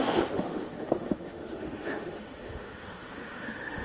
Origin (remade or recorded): remade